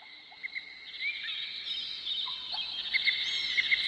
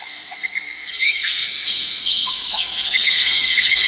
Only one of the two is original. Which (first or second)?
first